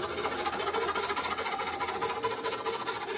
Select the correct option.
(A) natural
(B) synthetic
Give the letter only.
A